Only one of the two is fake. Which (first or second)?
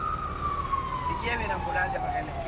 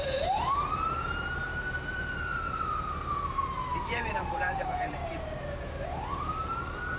second